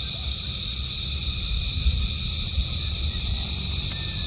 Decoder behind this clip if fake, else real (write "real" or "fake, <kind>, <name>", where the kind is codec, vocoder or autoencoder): real